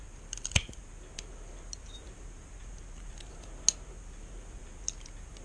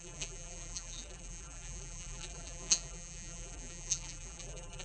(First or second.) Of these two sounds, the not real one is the second